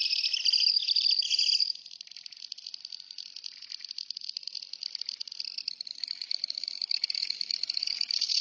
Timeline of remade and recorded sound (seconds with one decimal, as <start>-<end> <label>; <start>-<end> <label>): 0.0-5.9 recorded; 5.9-8.4 remade

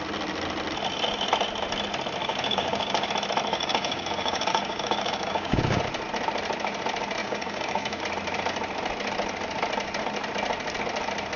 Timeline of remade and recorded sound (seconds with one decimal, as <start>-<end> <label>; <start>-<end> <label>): 0.0-2.2 recorded; 2.2-3.1 remade; 3.1-3.5 recorded; 3.5-5.8 remade; 5.8-7.2 recorded; 7.2-8.0 remade; 8.0-11.4 recorded

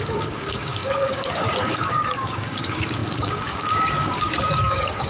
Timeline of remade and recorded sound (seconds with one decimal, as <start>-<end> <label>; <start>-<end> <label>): 0.0-5.1 remade

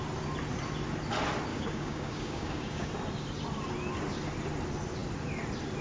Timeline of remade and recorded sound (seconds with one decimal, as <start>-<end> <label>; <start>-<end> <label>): 0.0-1.5 recorded; 1.5-2.9 remade; 2.9-5.8 recorded

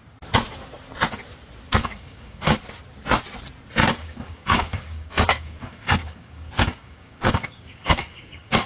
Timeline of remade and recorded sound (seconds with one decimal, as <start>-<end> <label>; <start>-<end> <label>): 0.0-1.8 recorded; 1.8-2.6 remade; 2.6-3.8 recorded; 3.8-8.7 remade

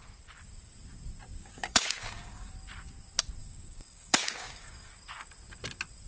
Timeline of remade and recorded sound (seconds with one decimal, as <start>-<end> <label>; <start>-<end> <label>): 0.0-1.4 recorded; 1.4-2.5 remade; 2.5-3.4 recorded; 3.4-4.9 remade; 4.9-6.1 recorded

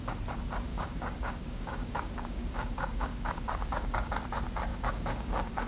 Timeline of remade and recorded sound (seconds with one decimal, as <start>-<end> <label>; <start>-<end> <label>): 0.0-0.7 recorded; 0.7-4.1 remade; 4.1-4.7 recorded; 4.7-5.7 remade

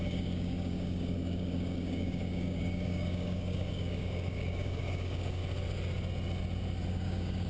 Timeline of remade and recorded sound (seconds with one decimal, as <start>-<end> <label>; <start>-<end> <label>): 0.0-5.4 remade; 5.4-6.9 recorded; 6.9-7.5 remade